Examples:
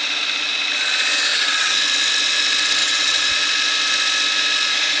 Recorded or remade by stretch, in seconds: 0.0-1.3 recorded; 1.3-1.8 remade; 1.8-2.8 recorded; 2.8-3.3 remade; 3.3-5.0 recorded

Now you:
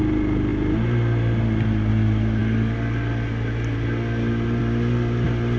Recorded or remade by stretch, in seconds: 0.0-5.6 recorded

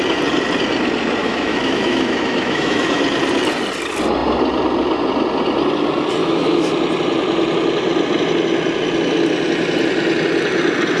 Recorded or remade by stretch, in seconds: 0.0-1.2 recorded; 1.2-3.0 remade; 3.0-6.2 recorded; 6.2-6.7 remade; 6.7-11.0 recorded